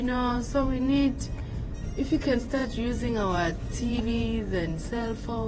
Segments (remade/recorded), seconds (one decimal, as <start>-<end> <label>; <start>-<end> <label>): 0.0-1.4 remade; 1.4-2.0 recorded; 2.0-5.5 remade